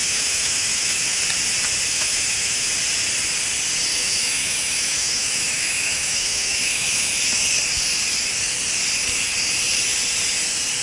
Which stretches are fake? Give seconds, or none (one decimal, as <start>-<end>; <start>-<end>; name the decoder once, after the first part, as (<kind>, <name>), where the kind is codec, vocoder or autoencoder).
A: 0.0-1.2 (autoencoder, DAC-VAE); 1.9-2.7; 3.9-7.1